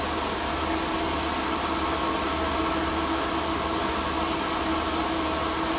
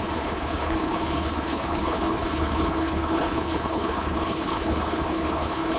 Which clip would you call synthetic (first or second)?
second